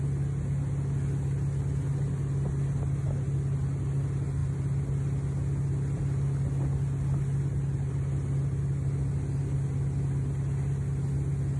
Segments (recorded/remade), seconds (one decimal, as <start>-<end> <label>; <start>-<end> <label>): 0.0-11.6 recorded